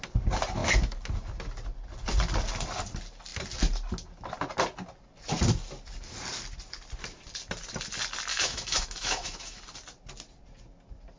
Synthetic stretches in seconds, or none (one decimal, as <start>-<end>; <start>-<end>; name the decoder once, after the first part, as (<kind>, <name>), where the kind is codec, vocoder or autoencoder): 8.3-9.6 (autoencoder, DAC-VAE)